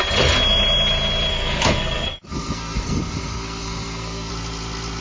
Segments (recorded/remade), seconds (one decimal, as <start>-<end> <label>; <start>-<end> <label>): 0.0-1.3 recorded; 1.3-4.3 remade; 4.3-5.0 recorded